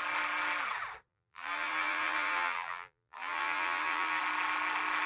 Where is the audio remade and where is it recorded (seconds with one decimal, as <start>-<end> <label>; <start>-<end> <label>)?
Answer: 0.0-1.1 recorded; 1.1-4.2 remade; 4.2-5.1 recorded